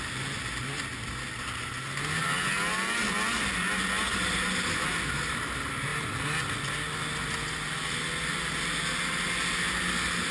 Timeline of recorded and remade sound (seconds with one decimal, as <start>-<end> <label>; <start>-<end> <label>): 0.0-10.3 recorded

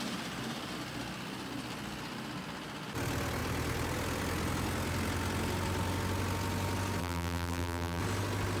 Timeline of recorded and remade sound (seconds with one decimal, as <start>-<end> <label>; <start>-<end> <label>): 0.0-7.0 recorded; 7.0-8.0 remade; 8.0-8.6 recorded

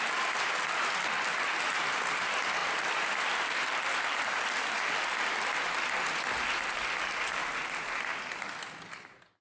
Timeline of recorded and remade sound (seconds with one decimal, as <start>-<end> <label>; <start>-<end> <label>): 0.0-2.6 recorded; 2.6-4.6 remade; 4.6-9.4 recorded

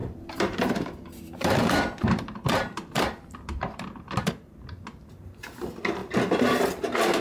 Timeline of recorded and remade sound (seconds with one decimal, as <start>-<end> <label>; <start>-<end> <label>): 0.0-4.3 remade; 4.3-7.2 recorded

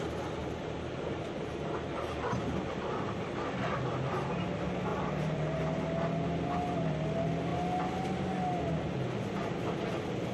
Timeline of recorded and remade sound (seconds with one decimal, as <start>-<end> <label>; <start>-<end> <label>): 0.0-0.4 recorded; 0.4-2.3 remade; 2.3-4.9 recorded; 4.9-5.6 remade; 5.6-10.3 recorded

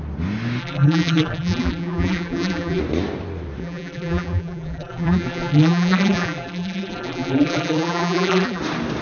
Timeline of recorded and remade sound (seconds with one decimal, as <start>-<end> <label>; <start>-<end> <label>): 0.0-0.6 recorded; 0.6-2.8 remade; 2.8-3.6 recorded; 3.6-8.6 remade; 8.6-9.0 recorded

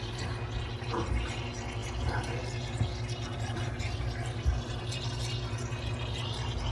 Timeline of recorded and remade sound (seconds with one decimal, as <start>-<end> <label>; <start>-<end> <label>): 0.0-6.7 recorded

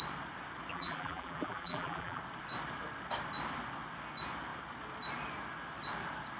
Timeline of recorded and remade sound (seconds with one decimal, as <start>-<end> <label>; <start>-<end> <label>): 0.0-0.7 recorded; 0.7-2.2 remade; 2.2-6.4 recorded